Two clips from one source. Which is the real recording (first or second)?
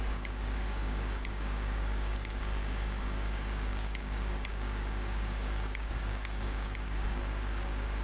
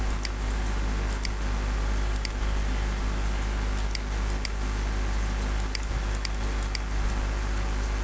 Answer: second